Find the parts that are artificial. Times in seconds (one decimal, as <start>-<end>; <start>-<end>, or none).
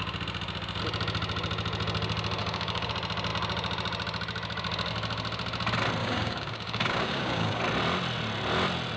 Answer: 2.4-2.9; 6.0-7.6